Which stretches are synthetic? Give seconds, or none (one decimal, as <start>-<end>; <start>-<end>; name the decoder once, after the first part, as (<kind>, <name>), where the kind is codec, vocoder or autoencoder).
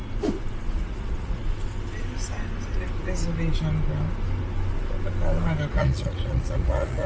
0.7-1.4 (vocoder, Vocos); 5.7-7.1